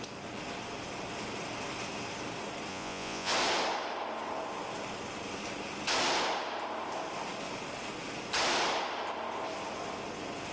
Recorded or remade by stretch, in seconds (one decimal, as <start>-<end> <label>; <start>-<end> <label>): 0.0-2.7 recorded; 2.7-3.3 remade; 3.3-10.5 recorded